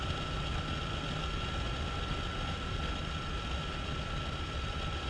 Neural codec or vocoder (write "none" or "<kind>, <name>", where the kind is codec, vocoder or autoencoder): none